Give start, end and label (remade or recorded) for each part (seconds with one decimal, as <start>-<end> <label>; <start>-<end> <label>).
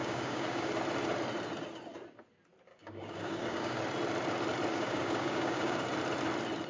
0.0-0.7 remade; 0.7-2.7 recorded; 2.7-3.8 remade; 3.8-4.7 recorded; 4.7-5.9 remade; 5.9-6.7 recorded